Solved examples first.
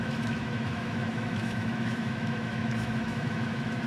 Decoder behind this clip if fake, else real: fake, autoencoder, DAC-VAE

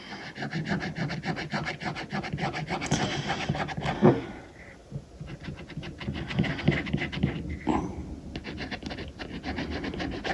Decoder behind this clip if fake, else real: real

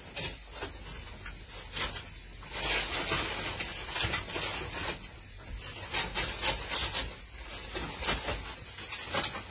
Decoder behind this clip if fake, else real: real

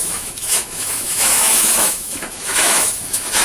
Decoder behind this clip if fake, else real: fake, autoencoder, DAC-VAE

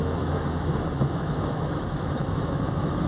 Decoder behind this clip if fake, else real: fake, autoencoder, DAC-VAE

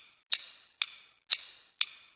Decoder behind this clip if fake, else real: real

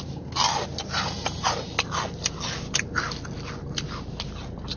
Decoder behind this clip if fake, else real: real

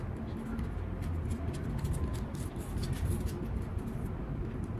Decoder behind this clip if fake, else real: real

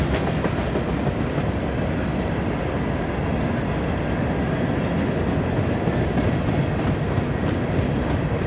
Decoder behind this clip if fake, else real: real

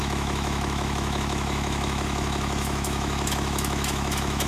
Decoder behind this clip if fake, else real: fake, autoencoder, DAC-VAE